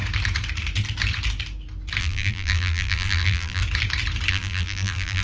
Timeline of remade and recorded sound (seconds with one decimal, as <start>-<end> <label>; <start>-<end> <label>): 0.0-2.0 recorded; 2.0-3.6 remade; 3.6-4.3 recorded; 4.3-5.2 remade